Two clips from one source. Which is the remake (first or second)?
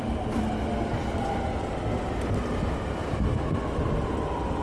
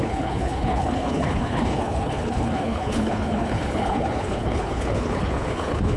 second